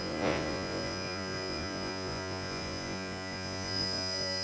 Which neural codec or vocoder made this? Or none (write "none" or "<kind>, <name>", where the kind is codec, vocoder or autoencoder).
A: vocoder, Vocos